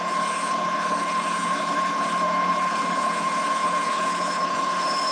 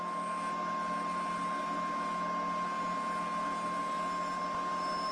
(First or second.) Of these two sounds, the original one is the second